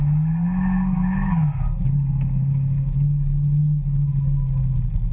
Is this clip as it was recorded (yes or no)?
yes